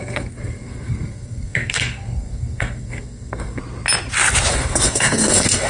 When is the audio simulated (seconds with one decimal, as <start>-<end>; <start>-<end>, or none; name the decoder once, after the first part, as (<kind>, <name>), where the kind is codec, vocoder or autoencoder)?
0.0-3.6 (codec, SNAC); 4.5-5.7